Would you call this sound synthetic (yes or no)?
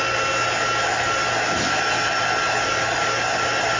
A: no